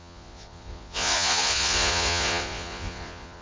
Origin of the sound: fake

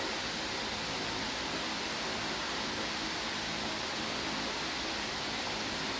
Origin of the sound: real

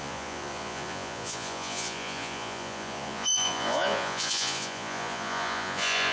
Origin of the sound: fake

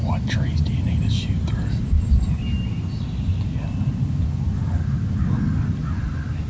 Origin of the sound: real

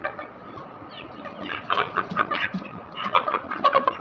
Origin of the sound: fake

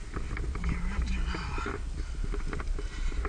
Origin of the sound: real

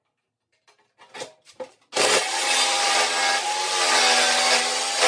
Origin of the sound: real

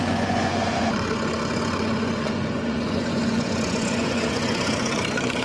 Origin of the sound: fake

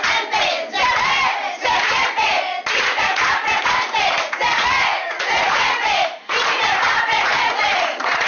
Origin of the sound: fake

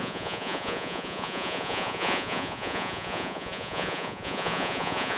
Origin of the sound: fake